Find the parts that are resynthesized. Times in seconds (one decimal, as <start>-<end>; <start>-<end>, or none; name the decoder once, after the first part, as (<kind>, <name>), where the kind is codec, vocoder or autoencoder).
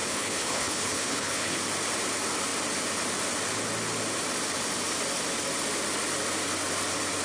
0.0-1.6 (codec, HILCodec)